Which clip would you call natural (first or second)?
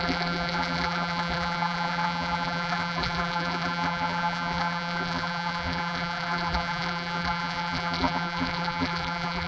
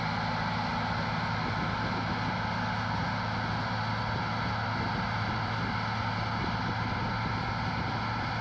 second